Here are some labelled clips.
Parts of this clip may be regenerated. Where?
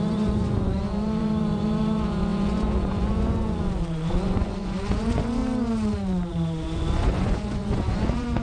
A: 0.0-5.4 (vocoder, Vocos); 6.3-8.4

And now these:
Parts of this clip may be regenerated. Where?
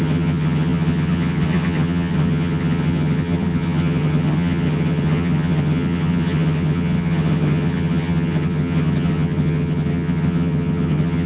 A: 0.0-11.3 (vocoder, HiFi-GAN)